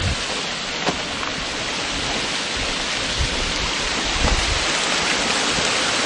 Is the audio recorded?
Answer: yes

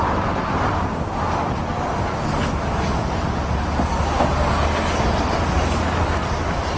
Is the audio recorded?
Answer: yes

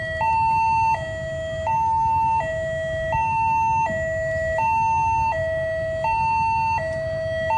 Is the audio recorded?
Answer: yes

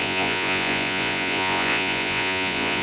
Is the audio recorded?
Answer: no